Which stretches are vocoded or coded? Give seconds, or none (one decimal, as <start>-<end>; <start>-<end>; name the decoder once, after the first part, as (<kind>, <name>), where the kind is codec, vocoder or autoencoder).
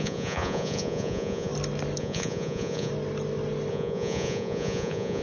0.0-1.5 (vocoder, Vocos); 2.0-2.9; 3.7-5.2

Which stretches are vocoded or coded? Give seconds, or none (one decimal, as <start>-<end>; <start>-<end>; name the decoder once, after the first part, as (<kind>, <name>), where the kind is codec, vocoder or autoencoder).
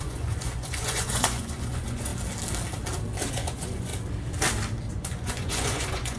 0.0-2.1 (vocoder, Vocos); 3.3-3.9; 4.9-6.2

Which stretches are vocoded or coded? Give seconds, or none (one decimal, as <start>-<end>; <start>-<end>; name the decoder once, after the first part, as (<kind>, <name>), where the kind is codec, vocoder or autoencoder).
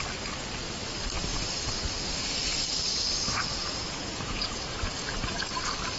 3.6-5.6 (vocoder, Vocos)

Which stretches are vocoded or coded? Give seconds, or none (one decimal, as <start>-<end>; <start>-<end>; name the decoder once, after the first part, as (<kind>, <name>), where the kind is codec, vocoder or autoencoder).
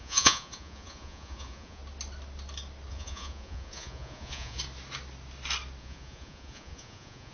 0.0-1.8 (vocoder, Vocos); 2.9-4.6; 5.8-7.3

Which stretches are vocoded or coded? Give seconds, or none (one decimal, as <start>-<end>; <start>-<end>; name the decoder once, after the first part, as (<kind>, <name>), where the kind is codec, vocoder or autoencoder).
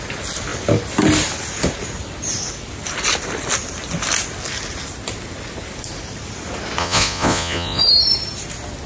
6.8-7.8 (vocoder, Vocos)